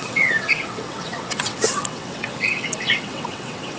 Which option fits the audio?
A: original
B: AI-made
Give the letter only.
B